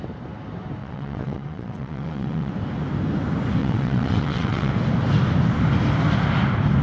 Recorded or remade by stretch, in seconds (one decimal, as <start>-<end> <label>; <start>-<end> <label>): 0.0-0.8 recorded; 0.8-2.5 remade; 2.5-3.6 recorded; 3.6-4.7 remade; 4.7-6.8 recorded